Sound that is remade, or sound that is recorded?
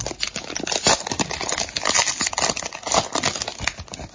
recorded